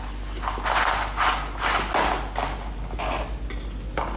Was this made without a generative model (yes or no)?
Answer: yes